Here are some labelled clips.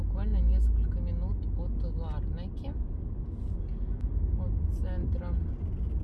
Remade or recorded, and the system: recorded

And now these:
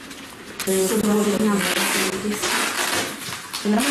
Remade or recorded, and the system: recorded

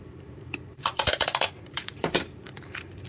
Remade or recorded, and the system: remade, vocoder, BigVGAN v2